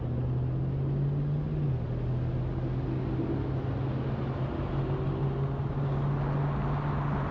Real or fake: real